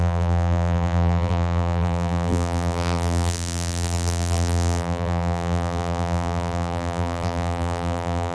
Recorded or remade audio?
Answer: remade